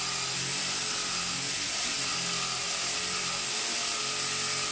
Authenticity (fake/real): real